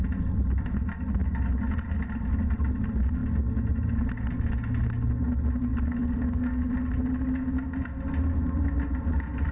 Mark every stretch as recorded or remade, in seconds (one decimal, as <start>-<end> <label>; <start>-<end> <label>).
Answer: 0.0-5.7 recorded; 5.7-6.7 remade; 6.7-9.5 recorded